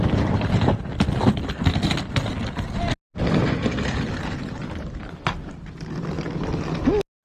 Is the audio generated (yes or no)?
no